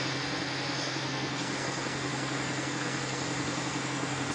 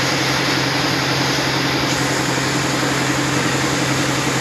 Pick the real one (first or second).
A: second